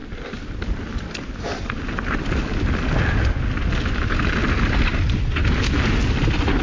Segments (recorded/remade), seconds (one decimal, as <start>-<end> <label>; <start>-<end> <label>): 0.0-2.1 remade; 2.1-6.6 recorded